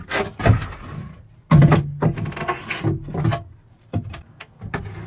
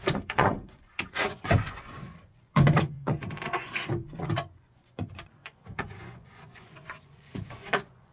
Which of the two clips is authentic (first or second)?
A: first